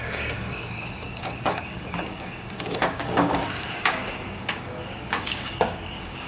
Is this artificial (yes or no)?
yes